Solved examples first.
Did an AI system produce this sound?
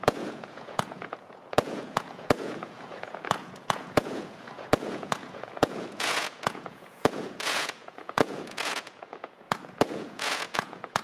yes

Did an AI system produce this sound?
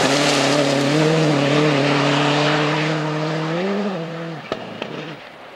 yes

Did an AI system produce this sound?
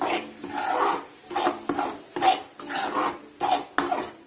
no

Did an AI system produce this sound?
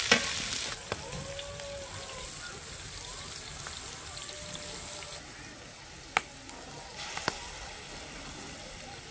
no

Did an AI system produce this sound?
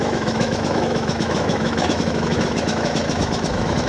yes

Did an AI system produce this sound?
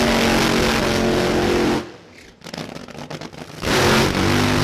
no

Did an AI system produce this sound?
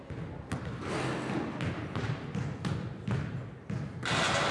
no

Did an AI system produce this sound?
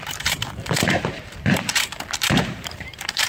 yes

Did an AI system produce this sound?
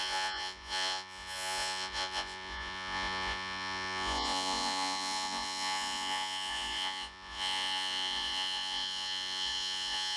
yes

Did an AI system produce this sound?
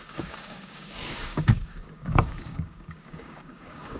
yes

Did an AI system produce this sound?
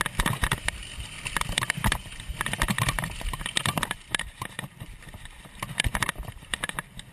no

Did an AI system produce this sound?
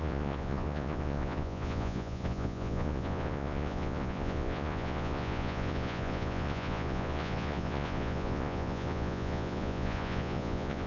yes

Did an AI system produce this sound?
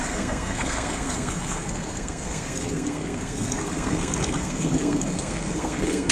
yes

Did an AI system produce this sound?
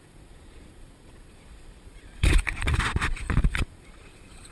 yes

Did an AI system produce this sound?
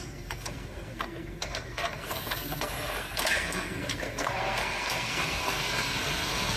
yes